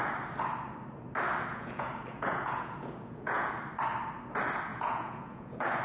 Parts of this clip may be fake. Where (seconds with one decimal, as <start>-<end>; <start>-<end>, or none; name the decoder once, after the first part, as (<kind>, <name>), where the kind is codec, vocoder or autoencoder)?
1.5-3.5 (vocoder, Vocos); 4.7-5.8